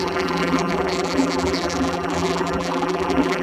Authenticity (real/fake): fake